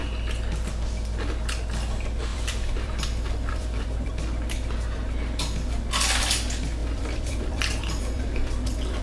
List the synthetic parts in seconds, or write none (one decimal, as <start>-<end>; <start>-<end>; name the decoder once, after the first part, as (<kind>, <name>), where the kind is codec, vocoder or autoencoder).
2.3-4.1 (vocoder, BigVGAN v2); 6.8-9.0